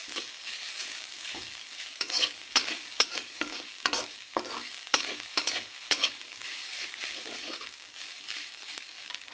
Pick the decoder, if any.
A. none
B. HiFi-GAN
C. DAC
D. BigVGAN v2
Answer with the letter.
C